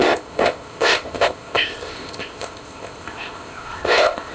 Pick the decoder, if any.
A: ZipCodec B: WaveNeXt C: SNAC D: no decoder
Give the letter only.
A